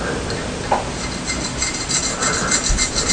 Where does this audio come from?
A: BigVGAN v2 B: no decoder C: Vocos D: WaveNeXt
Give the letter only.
B